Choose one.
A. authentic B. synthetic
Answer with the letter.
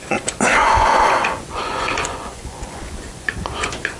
B